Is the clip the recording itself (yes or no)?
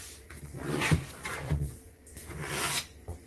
no